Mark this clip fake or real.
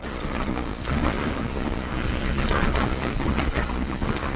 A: fake